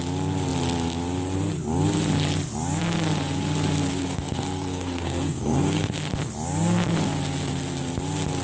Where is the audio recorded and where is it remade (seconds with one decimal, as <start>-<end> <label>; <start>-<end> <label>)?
0.0-3.9 recorded; 3.9-5.9 remade; 5.9-8.4 recorded

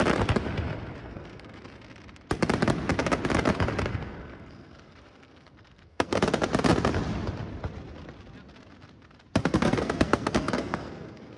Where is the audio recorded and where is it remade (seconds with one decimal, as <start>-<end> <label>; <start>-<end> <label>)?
0.0-1.0 recorded; 1.0-1.6 remade; 1.6-3.9 recorded; 3.9-6.2 remade; 6.2-9.4 recorded; 9.4-11.4 remade

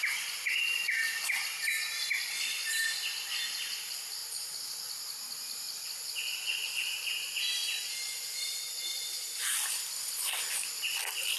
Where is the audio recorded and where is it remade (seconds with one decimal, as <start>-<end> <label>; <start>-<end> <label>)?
0.0-11.4 recorded

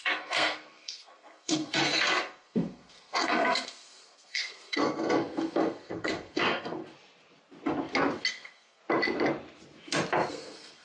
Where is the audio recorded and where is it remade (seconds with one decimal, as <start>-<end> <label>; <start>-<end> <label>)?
0.0-6.8 remade; 6.8-8.3 recorded; 8.3-8.8 remade; 8.8-10.3 recorded; 10.3-10.8 remade

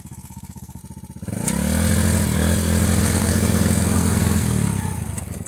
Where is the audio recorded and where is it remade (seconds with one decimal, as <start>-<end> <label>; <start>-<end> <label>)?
0.0-0.8 remade; 0.8-3.0 recorded; 3.0-5.5 remade

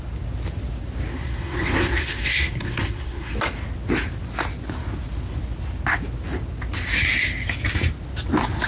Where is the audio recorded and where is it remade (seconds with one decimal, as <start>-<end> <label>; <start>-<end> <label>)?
0.0-1.1 recorded; 1.1-3.3 remade; 3.3-8.7 recorded

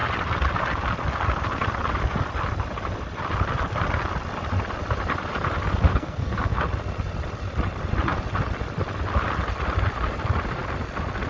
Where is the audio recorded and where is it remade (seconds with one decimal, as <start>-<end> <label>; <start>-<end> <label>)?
0.0-5.9 recorded; 5.9-6.6 remade; 6.6-11.3 recorded